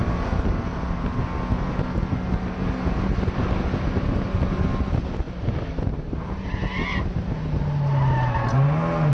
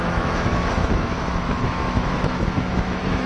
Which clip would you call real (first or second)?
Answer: first